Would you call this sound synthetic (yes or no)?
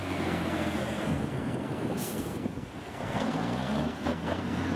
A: yes